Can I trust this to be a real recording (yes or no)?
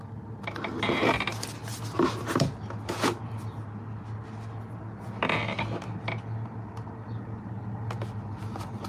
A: yes